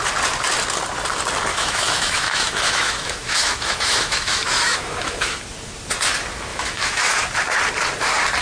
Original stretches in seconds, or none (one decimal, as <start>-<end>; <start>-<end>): 0.0-1.5; 5.4-6.5; 7.2-8.4